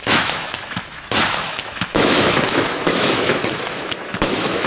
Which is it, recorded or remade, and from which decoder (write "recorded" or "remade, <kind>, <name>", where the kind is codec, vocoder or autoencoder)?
remade, autoencoder, DAC-VAE